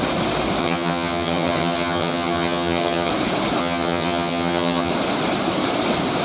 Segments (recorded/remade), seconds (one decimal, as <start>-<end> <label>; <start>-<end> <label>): 0.0-0.6 recorded; 0.6-3.1 remade; 3.1-3.6 recorded; 3.6-4.9 remade; 4.9-6.2 recorded